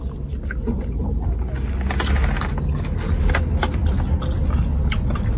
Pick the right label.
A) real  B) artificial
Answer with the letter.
A